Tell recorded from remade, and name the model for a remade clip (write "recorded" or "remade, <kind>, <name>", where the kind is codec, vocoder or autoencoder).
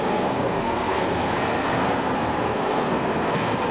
remade, codec, SNAC